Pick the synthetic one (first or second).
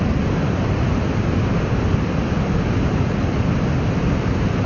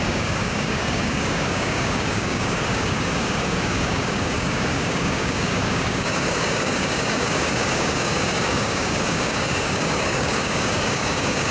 second